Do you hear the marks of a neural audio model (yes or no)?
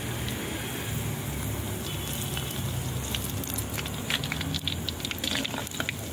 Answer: no